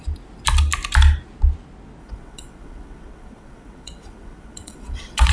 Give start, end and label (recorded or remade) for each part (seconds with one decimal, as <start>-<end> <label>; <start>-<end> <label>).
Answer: 0.0-2.0 recorded; 2.0-5.3 remade